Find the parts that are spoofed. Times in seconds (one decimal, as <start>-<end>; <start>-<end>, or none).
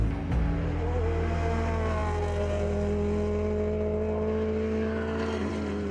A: none